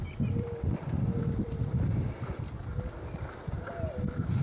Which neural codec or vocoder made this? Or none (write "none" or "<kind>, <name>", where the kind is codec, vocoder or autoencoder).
vocoder, BigVGAN v2